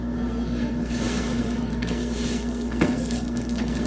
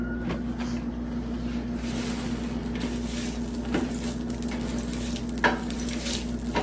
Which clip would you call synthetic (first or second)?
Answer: first